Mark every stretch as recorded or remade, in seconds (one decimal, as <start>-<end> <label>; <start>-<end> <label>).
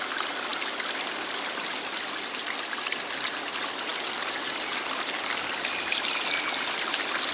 0.0-7.3 recorded